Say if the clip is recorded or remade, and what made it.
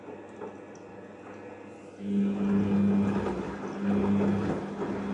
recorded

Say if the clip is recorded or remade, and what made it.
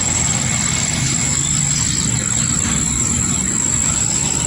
recorded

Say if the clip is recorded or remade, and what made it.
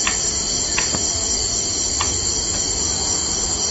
recorded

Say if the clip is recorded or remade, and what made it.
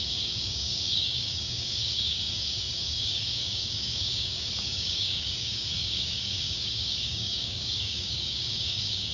remade, codec, DAC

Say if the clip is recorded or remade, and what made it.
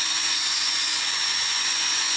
remade, vocoder, Vocos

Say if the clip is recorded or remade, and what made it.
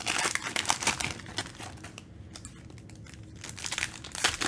recorded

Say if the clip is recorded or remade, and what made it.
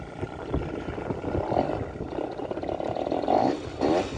recorded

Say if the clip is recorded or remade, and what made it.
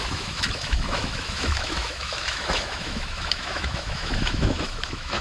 remade, autoencoder, DAC-VAE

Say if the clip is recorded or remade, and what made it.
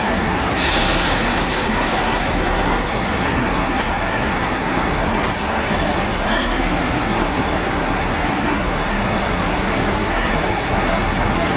remade, codec, SNAC